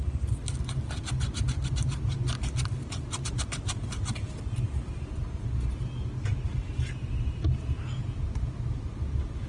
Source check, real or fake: real